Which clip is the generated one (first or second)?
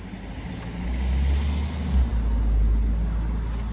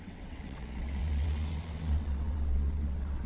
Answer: second